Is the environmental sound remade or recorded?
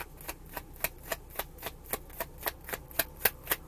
recorded